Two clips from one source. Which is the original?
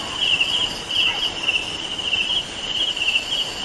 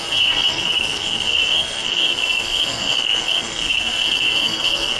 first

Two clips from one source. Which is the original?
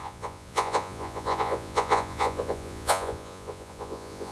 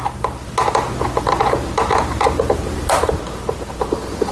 second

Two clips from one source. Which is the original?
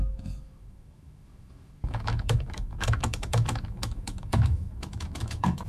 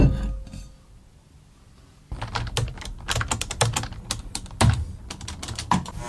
second